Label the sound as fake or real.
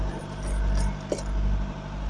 real